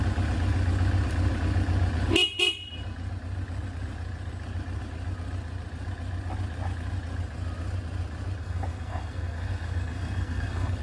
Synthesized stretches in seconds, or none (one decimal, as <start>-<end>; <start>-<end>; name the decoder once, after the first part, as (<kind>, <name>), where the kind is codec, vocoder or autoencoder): 8.4-10.8 (codec, SNAC)